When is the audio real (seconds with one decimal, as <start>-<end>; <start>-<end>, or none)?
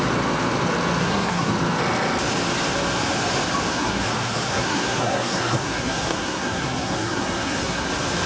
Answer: 0.0-1.0; 1.5-3.7; 7.9-8.3